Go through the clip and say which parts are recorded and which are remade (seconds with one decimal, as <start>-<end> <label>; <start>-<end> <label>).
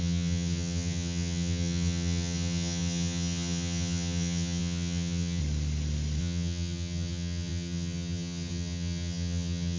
0.0-5.4 remade; 5.4-6.2 recorded; 6.2-9.8 remade